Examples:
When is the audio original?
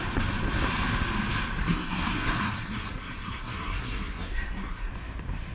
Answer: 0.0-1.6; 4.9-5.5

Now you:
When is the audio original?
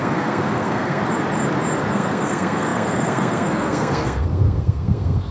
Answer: 1.0-1.9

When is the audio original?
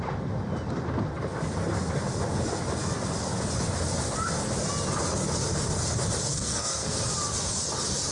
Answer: 0.0-6.3; 7.0-8.1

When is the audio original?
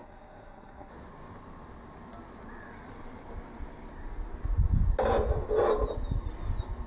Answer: 0.9-6.9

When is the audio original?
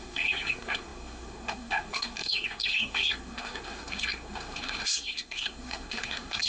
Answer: none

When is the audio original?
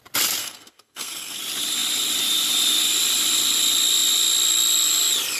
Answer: 0.0-0.4; 1.4-5.4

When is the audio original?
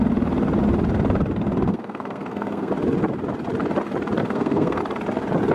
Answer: 0.0-1.7; 2.7-4.2; 4.8-5.5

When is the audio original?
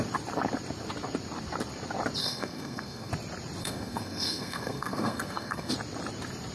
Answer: 0.0-2.2; 3.1-3.6; 5.7-6.5